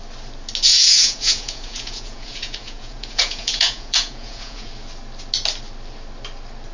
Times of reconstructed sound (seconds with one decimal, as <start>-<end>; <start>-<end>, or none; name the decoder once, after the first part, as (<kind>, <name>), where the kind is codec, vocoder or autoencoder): 0.7-4.7 (vocoder, Vocos)